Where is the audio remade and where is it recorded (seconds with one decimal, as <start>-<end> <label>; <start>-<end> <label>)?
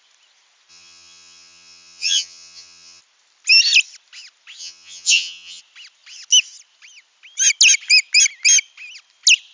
0.0-0.7 recorded; 0.7-3.0 remade; 3.0-4.6 recorded; 4.6-5.6 remade; 5.6-9.5 recorded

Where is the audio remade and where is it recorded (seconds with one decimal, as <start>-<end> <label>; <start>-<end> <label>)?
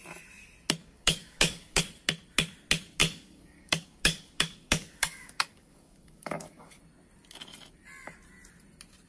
0.0-0.8 recorded; 0.8-1.8 remade; 1.8-3.0 recorded; 3.0-6.8 remade; 6.8-9.1 recorded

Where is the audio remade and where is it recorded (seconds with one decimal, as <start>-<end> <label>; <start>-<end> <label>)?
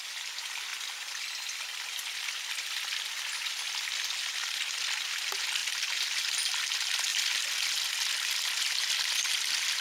0.0-9.8 recorded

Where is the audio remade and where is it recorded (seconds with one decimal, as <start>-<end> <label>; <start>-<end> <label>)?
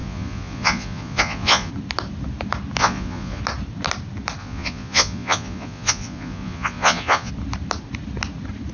0.0-1.7 remade; 1.7-2.8 recorded; 2.8-3.4 remade; 3.4-4.4 recorded; 4.4-7.3 remade; 7.3-8.7 recorded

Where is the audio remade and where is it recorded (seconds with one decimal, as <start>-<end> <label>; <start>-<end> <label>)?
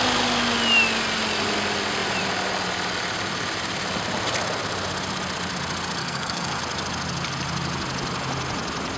0.0-6.0 recorded; 6.0-6.6 remade; 6.6-9.0 recorded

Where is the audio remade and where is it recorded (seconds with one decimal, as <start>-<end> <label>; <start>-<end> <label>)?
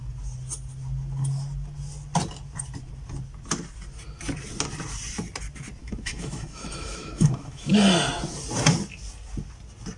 0.0-5.8 recorded; 5.8-7.7 remade; 7.7-10.0 recorded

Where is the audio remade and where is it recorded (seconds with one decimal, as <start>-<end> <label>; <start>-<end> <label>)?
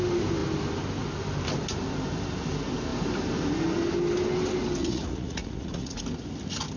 0.0-4.8 recorded; 4.8-6.0 remade; 6.0-6.8 recorded